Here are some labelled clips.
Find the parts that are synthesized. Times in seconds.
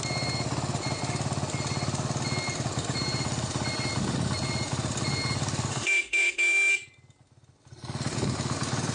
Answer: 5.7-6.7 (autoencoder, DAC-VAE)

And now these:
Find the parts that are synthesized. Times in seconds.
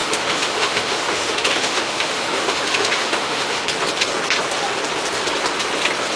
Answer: 0.0-3.7 (autoencoder, DAC-VAE)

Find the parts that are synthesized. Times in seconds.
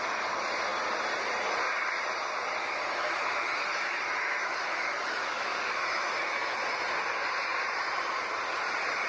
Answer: 2.6-6.5 (autoencoder, DAC-VAE)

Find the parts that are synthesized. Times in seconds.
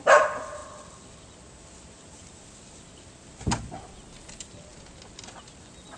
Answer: none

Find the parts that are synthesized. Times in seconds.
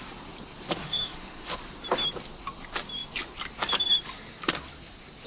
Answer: 0.8-1.5 (autoencoder, DAC-VAE)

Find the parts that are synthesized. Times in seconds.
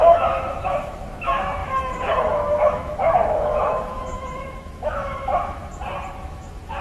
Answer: 0.0-5.7 (autoencoder, DAC-VAE); 6.2-6.8